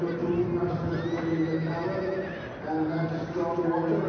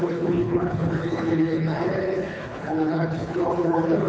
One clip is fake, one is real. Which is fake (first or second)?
second